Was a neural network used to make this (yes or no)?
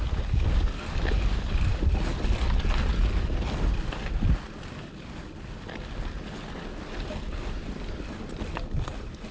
no